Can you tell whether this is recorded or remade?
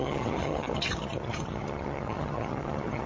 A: remade